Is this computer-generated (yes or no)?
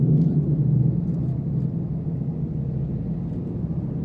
no